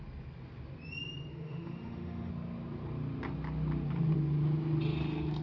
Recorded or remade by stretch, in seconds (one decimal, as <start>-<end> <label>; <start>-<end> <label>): 0.0-1.3 recorded; 1.3-2.3 remade; 2.3-5.4 recorded